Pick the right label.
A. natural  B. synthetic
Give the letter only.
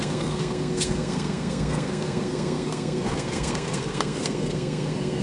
B